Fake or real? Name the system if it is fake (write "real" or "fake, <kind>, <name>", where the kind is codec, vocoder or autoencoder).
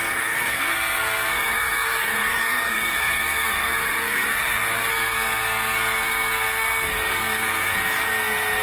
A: fake, codec, SNAC